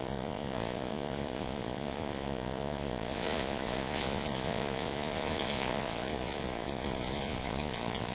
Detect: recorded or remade remade